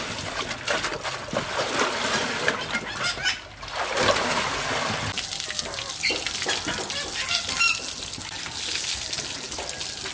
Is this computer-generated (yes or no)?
no